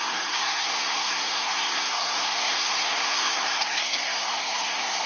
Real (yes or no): no